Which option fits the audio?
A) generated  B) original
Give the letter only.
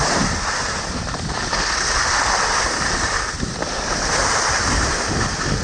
B